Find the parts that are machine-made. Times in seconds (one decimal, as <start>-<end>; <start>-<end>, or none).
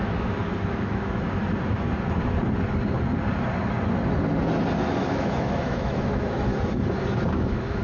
0.0-1.4; 4.9-6.5; 7.3-7.8